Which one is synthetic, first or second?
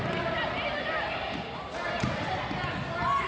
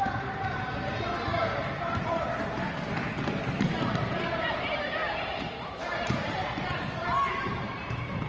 second